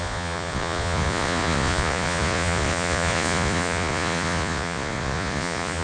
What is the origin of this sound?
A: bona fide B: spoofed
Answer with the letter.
B